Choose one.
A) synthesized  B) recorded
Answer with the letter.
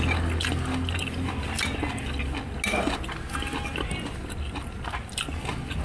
B